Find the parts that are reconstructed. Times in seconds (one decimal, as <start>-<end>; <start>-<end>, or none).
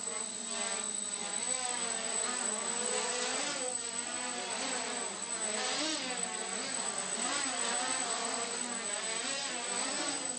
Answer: none